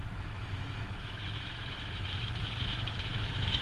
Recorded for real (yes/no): no